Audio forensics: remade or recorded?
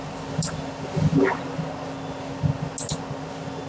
recorded